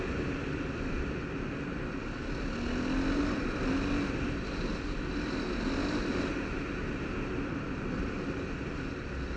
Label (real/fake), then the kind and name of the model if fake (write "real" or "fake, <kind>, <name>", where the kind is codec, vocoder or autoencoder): real